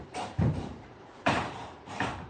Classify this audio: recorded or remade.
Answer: remade